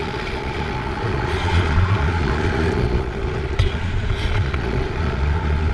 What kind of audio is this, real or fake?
fake